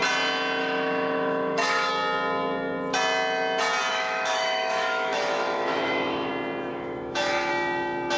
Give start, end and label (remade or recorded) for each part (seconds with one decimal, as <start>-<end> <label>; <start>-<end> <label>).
0.0-0.6 recorded; 0.6-1.9 remade; 1.9-3.9 recorded; 3.9-6.3 remade; 6.3-6.7 recorded; 6.7-7.5 remade; 7.5-8.2 recorded